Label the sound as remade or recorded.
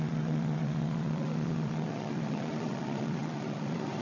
remade